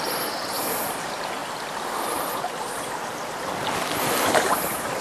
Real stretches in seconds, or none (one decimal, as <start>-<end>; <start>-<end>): 0.0-5.0